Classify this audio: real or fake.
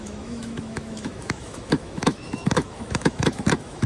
fake